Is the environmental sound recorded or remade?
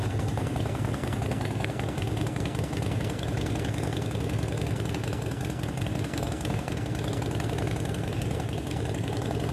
remade